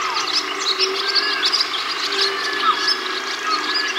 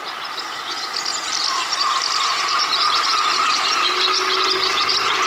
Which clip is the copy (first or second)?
second